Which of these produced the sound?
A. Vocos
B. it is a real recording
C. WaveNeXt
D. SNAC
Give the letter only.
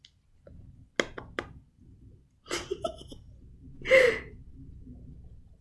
B